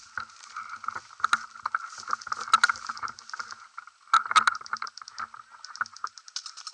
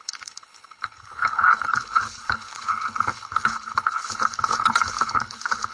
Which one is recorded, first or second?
first